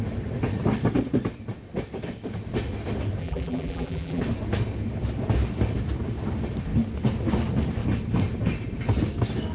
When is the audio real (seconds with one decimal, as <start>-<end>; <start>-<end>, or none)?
0.0-3.2; 4.2-9.5

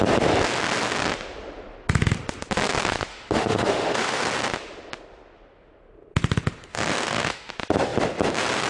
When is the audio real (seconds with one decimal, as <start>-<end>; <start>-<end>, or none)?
0.0-3.1; 4.2-6.7; 7.5-8.7

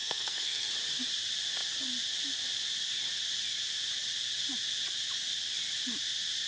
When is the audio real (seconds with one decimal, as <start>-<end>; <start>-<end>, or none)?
0.7-6.5

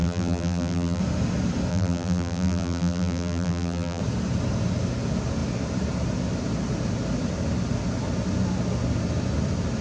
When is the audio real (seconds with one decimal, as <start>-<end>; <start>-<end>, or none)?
1.0-1.7; 4.0-9.8